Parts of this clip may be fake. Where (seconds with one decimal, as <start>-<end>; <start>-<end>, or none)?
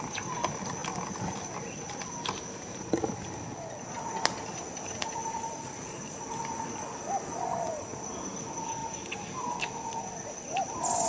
5.2-6.0; 8.8-10.0